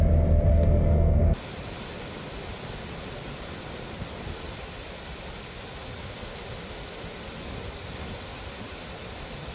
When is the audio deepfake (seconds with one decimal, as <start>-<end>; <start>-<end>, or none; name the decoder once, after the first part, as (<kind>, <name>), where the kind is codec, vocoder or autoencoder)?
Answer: 0.5-1.2 (codec, SNAC)